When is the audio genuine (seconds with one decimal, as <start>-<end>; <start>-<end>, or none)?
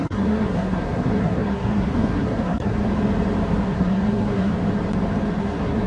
2.9-3.6; 4.5-5.4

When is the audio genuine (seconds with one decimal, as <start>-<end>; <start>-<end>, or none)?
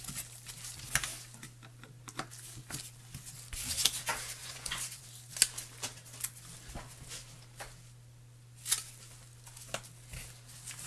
0.0-4.4; 5.0-10.9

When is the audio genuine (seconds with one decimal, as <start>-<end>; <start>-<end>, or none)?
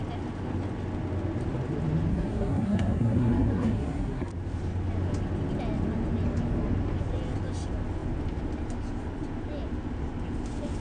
0.0-2.1; 4.3-10.8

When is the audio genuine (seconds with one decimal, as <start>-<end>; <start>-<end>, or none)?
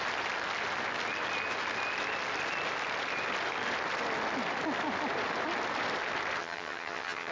0.0-6.4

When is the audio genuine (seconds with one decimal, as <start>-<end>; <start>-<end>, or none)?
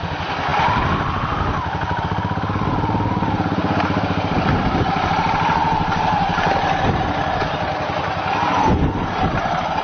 0.0-9.8